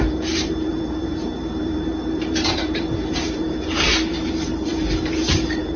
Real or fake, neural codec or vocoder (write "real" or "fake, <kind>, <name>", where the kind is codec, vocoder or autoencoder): fake, vocoder, BigVGAN v2